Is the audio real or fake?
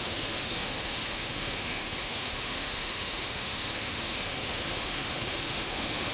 fake